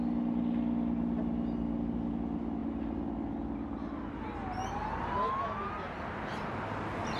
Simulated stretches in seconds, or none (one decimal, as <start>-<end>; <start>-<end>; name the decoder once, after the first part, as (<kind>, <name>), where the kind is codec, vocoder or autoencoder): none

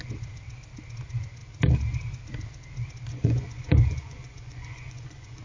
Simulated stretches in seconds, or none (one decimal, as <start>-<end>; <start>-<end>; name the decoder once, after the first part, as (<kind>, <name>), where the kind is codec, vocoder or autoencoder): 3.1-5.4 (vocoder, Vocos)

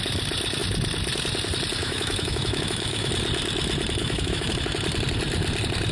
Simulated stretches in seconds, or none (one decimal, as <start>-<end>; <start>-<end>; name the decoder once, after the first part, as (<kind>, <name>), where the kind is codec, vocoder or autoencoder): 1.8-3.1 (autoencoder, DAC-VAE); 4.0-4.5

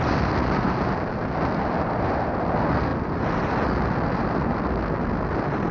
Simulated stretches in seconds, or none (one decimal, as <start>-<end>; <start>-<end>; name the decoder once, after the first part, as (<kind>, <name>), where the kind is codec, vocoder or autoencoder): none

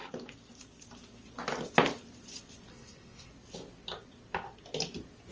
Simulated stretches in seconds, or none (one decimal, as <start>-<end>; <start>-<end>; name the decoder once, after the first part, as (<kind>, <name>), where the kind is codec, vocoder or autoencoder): 2.7-3.3 (codec, SNAC)